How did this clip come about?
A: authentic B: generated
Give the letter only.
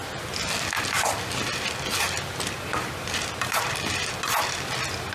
A